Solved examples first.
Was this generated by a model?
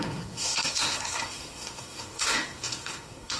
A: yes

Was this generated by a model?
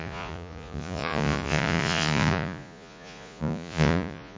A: yes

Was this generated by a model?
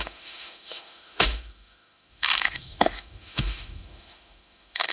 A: yes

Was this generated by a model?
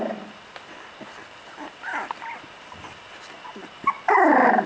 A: no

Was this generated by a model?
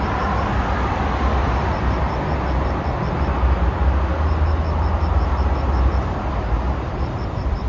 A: no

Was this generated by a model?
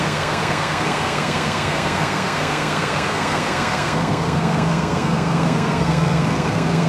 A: yes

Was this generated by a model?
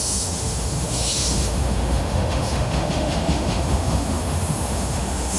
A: yes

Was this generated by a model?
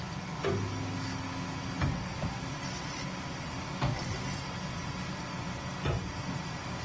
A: no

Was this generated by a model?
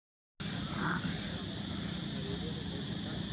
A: no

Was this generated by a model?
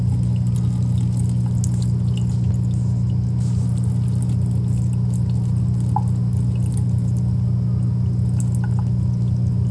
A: no